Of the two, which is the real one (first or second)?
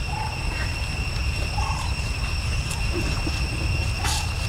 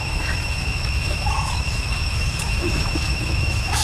first